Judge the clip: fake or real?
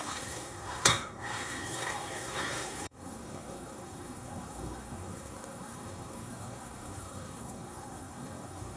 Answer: fake